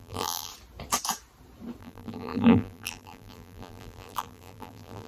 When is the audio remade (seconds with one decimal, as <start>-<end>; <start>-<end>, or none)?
0.0-0.5; 1.8-5.1